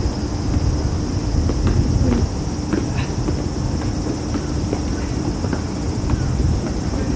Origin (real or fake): real